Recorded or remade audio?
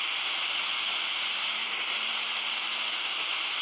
recorded